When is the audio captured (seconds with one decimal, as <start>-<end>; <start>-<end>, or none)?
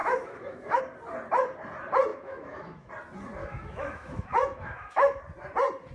0.8-2.1; 2.9-3.4; 5.2-5.9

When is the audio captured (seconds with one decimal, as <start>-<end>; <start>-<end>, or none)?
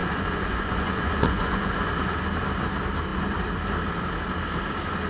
1.9-5.1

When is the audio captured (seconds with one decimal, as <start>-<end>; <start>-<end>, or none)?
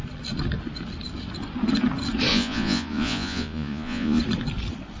0.0-2.3; 4.2-5.0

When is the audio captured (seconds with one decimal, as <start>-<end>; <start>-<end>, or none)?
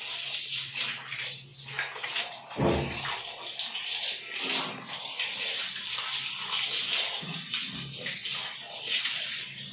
0.0-9.7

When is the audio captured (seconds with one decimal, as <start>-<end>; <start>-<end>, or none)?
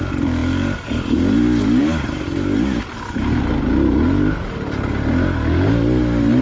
0.0-6.4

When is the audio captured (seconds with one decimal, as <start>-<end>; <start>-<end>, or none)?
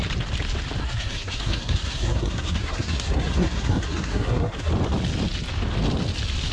0.0-0.8; 4.7-6.5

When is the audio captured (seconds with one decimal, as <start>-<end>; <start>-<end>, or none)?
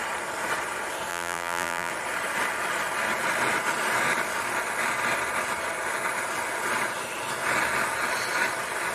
0.0-1.1; 1.9-8.9